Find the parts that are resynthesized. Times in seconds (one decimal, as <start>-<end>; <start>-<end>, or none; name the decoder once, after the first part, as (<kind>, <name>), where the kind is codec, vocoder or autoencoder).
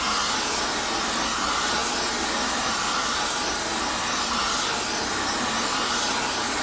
none